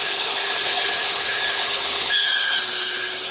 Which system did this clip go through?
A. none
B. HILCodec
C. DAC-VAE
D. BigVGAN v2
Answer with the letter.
B